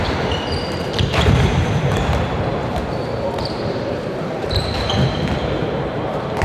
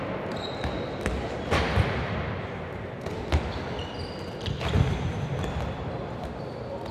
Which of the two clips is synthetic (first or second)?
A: first